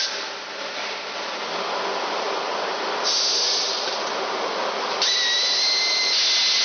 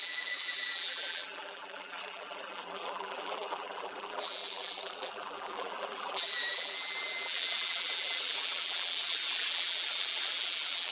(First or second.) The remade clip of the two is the second